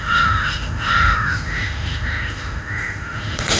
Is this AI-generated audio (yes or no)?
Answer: yes